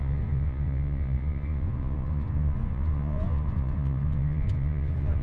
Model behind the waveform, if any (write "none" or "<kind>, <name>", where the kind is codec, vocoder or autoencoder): vocoder, Vocos